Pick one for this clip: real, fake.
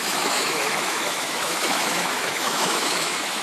fake